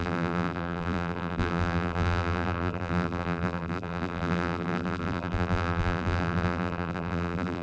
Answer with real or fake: fake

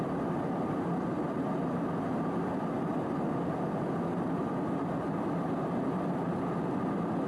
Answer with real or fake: real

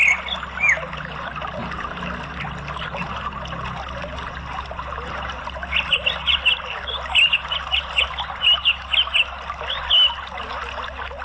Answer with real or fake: real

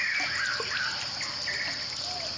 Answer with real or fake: real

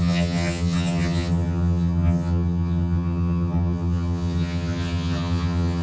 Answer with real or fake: fake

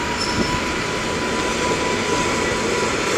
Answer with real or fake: real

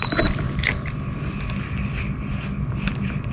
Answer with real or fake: real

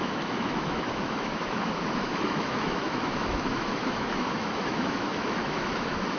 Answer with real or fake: fake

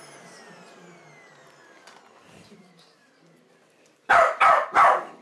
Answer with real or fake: real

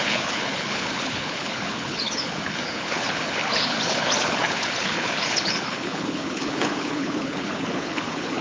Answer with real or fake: fake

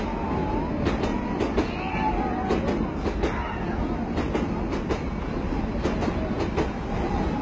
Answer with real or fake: real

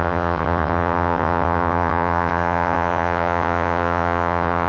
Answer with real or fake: fake